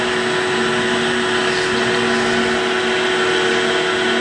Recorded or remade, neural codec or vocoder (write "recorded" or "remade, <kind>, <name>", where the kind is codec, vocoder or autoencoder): recorded